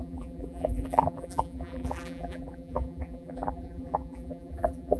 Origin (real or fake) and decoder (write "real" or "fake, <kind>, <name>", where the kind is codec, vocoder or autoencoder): fake, vocoder, BigVGAN v2